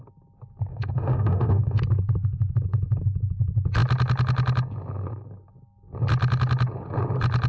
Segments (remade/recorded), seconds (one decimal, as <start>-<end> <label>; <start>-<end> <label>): 0.0-0.7 recorded; 0.7-1.8 remade; 1.8-7.5 recorded